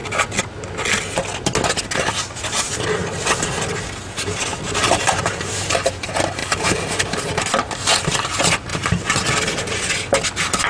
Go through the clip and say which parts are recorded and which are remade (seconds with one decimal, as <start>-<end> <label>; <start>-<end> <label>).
0.0-4.8 recorded; 4.8-6.0 remade; 6.0-6.4 recorded; 6.4-7.4 remade; 7.4-8.7 recorded; 8.7-9.9 remade; 9.9-10.7 recorded